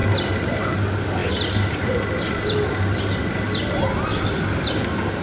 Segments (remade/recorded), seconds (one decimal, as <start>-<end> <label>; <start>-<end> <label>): 0.0-5.2 recorded